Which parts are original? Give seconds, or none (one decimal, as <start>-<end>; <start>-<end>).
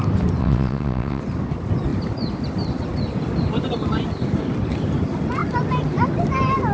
0.0-0.4; 1.2-6.7